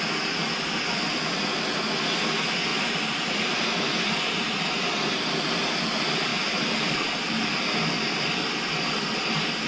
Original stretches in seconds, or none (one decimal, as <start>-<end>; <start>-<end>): 0.0-2.7; 5.2-9.7